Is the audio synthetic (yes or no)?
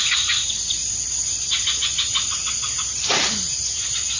no